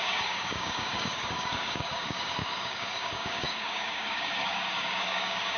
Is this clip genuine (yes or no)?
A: no